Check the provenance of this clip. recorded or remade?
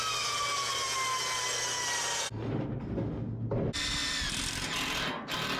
recorded